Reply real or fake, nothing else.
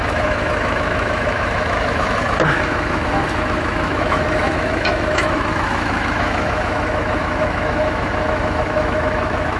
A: fake